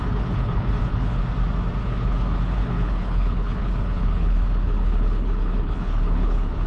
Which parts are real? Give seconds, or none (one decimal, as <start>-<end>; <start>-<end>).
1.2-1.8